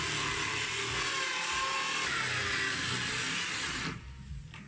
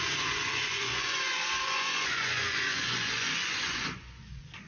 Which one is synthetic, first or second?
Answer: second